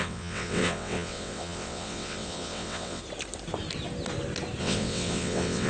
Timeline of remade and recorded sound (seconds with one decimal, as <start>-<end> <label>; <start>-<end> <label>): 0.0-3.0 remade; 3.0-4.6 recorded; 4.6-5.7 remade